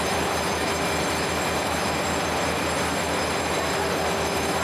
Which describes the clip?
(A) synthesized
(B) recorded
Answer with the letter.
B